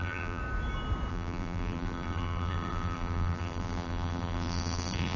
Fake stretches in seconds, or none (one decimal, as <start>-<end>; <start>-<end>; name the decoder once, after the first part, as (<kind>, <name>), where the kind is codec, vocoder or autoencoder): 0.0-0.4 (vocoder, BigVGAN v2); 1.1-5.2